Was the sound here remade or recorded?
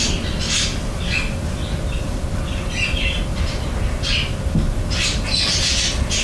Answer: recorded